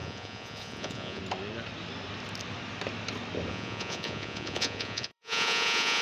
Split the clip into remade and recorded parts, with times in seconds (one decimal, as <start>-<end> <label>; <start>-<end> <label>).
0.0-1.2 remade; 1.2-3.5 recorded; 3.5-6.0 remade